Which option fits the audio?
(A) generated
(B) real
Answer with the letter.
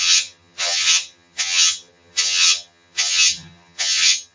A